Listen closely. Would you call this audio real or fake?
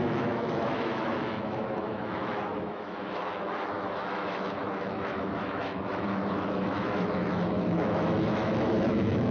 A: fake